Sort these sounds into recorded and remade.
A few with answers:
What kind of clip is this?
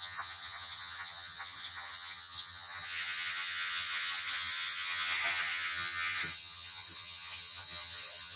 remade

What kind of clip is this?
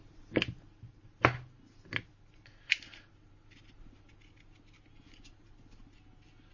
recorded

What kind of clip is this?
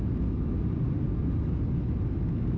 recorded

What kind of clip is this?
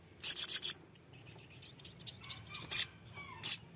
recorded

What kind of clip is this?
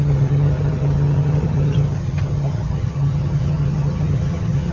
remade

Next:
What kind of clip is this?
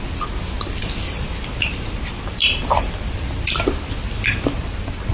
recorded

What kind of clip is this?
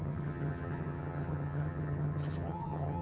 remade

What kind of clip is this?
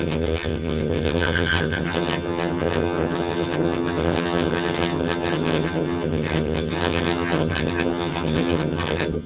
remade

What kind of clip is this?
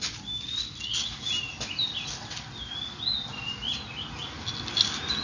recorded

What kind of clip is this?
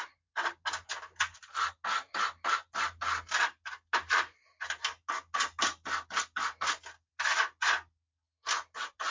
recorded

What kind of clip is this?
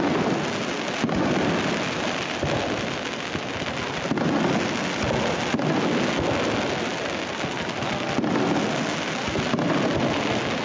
recorded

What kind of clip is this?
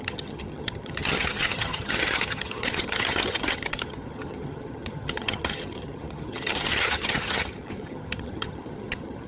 remade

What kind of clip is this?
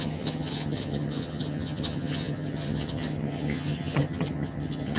remade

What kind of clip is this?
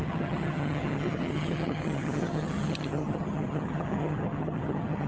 remade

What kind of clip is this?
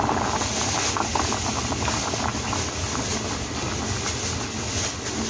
recorded